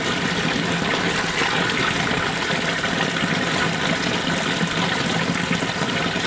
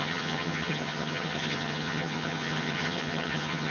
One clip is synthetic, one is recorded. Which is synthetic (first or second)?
second